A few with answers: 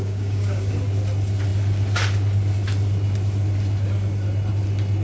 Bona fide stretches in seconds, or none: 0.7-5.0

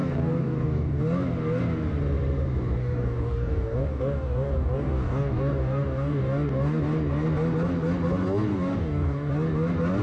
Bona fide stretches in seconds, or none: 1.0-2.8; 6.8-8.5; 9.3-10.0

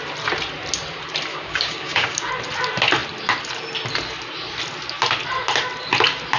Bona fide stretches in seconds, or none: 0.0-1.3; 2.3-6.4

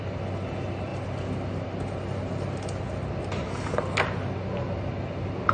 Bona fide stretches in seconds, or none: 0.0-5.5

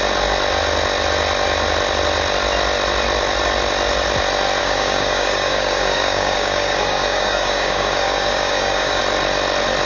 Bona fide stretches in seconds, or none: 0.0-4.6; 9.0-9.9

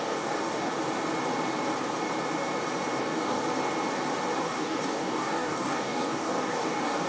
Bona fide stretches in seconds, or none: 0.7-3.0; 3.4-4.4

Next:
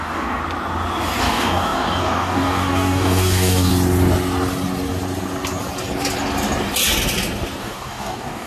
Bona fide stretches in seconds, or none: 0.4-1.2; 3.7-7.6